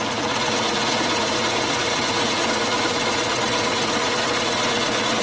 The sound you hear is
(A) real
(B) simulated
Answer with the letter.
B